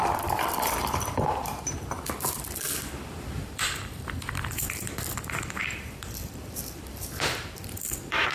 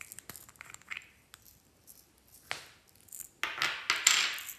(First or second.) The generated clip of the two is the first